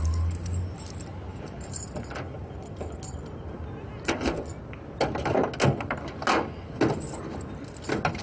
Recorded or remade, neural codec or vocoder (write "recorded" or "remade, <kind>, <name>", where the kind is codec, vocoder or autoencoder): recorded